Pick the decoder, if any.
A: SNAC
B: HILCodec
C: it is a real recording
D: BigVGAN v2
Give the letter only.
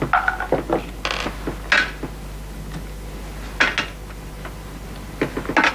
C